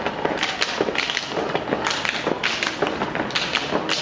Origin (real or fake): real